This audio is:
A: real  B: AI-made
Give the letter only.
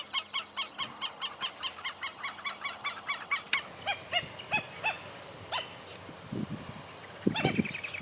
A